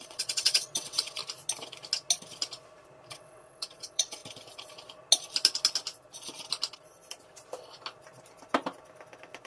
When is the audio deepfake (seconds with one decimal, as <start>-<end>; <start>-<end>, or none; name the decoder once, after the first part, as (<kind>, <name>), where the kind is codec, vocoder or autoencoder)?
0.0-1.2 (vocoder, WaveNeXt); 3.1-4.2